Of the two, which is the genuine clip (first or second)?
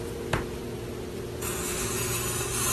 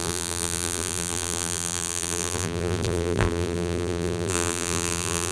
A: first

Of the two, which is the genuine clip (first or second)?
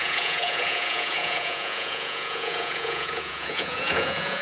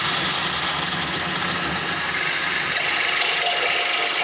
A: second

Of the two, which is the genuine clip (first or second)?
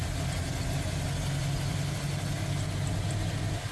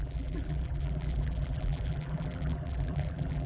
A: first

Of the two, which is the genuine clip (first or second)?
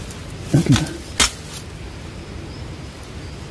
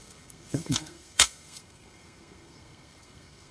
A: first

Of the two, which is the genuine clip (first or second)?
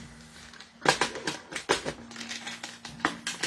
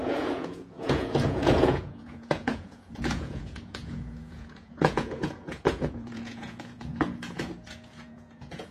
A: first